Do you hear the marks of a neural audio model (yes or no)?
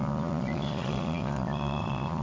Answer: yes